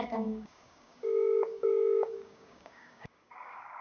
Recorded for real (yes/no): no